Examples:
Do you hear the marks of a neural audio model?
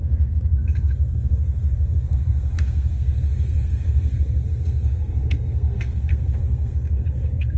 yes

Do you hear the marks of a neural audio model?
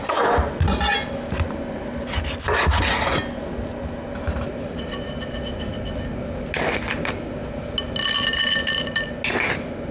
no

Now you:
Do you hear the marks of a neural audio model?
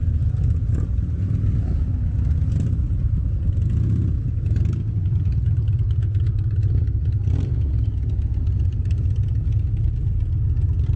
no